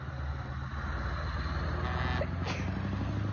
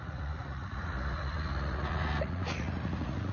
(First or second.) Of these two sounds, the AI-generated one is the second